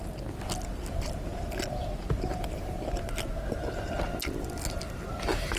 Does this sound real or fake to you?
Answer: real